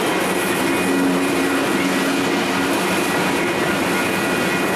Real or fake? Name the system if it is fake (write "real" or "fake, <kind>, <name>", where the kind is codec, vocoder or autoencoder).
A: real